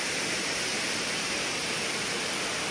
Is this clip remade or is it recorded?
recorded